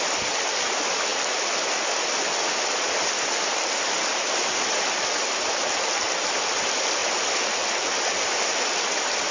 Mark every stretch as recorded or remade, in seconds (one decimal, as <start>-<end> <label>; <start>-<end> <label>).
0.0-9.3 recorded

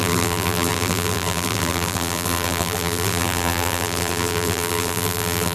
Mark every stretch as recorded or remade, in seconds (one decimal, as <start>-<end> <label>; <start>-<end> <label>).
0.0-5.5 remade

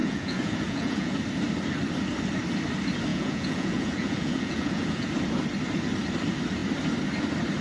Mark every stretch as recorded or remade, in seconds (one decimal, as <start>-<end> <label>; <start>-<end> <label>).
0.0-1.2 remade; 1.2-3.1 recorded; 3.1-5.1 remade; 5.1-7.6 recorded

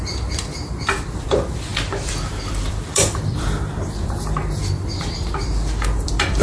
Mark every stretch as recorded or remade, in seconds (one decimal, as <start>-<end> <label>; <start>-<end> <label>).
0.0-6.4 remade